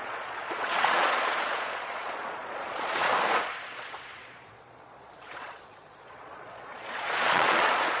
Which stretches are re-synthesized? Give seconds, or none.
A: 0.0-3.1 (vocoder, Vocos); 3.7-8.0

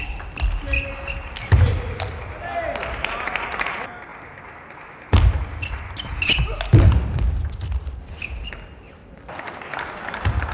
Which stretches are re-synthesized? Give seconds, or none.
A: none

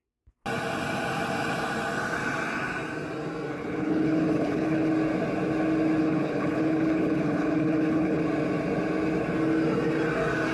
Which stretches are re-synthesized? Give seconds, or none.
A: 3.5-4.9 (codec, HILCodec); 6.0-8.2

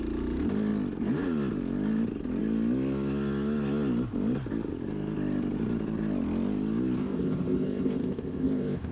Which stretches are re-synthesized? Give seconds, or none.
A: 7.0-8.9 (codec, ZipCodec)

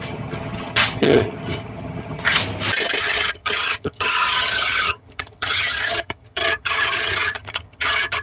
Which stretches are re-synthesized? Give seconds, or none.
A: 0.0-2.4 (vocoder, HiFi-GAN); 3.0-8.2

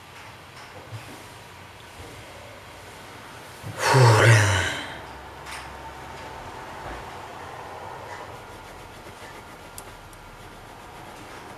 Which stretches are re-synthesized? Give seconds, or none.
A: 7.3-9.1 (vocoder, BigVGAN v2)